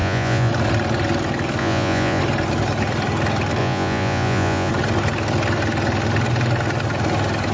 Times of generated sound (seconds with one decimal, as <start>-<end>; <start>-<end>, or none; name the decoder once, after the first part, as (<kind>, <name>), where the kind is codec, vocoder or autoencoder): 0.0-0.5 (vocoder, Vocos); 1.6-2.2; 3.6-4.7